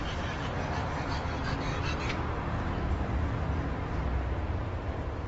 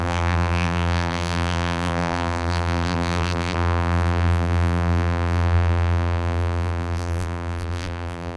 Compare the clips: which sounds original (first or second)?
first